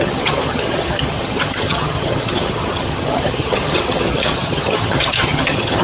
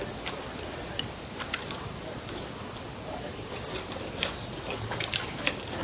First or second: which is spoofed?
first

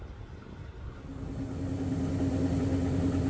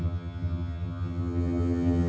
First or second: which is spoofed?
second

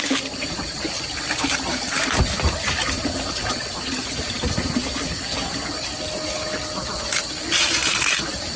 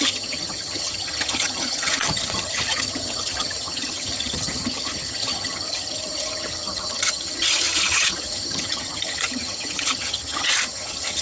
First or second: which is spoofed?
second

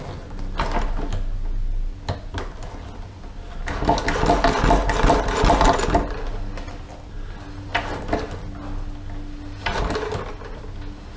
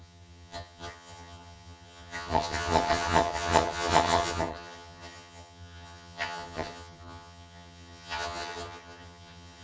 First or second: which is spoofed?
second